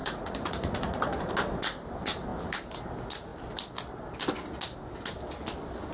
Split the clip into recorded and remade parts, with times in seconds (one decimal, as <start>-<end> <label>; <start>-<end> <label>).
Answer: 0.0-1.3 remade; 1.3-5.9 recorded